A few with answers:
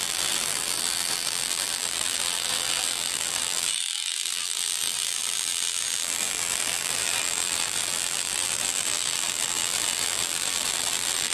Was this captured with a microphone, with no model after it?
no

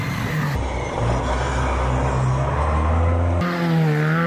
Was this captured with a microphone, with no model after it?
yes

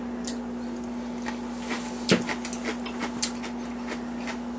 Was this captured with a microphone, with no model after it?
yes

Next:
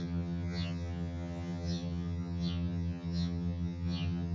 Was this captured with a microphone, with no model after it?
no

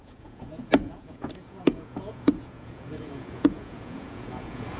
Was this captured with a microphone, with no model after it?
no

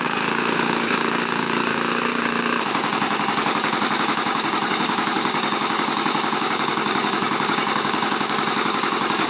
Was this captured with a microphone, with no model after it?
no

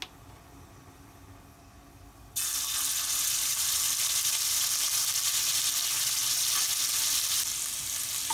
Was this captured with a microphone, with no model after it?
yes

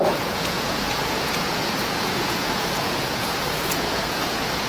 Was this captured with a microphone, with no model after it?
no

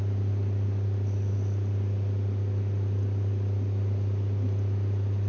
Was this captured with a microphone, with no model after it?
yes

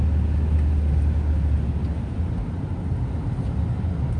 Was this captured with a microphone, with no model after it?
yes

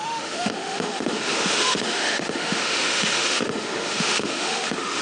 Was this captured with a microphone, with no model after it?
no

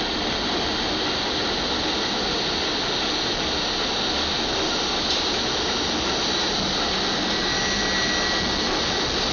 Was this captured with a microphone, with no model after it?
yes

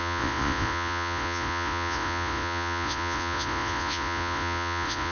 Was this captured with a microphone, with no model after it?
no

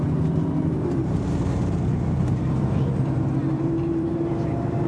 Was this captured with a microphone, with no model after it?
no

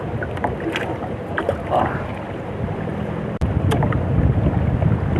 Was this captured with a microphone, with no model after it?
yes